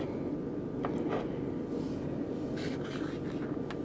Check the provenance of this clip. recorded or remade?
recorded